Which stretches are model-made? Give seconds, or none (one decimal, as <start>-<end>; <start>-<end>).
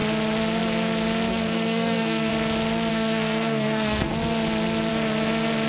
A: 1.3-2.3; 2.9-4.1